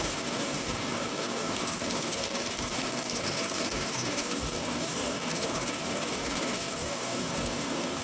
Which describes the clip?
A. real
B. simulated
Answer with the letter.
B